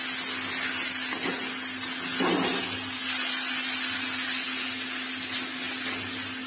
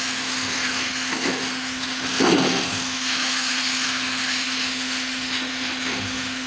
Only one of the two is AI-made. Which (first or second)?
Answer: second